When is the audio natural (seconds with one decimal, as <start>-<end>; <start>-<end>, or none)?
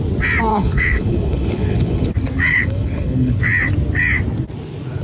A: 0.0-0.5; 2.1-2.5; 3.4-5.0